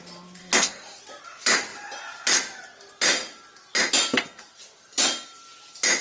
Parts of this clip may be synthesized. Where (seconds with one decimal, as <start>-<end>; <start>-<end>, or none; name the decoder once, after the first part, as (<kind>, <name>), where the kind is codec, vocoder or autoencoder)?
0.4-1.0 (codec, SNAC)